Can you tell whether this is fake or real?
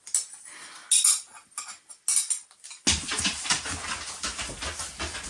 real